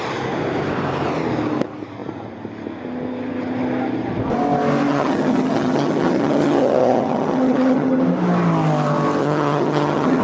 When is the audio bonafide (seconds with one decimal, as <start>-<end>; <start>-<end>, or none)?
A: 0.0-4.9; 8.0-9.2